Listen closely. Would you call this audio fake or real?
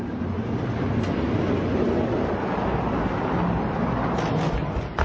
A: real